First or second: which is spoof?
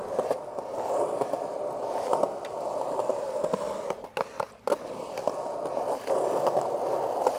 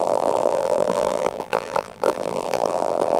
second